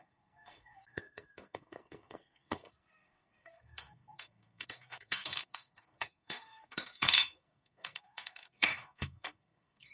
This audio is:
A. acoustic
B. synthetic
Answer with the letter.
B